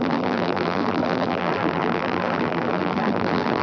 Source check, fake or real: fake